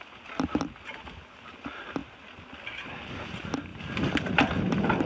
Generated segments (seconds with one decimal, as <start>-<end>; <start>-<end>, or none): none